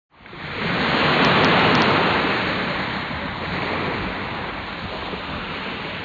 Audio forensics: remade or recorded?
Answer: recorded